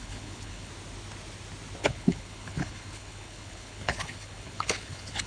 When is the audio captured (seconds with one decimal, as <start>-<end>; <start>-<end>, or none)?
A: 0.7-1.8